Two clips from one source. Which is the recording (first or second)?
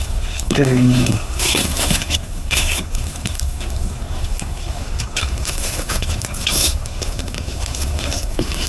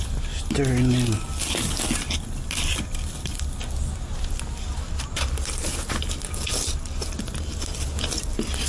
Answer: second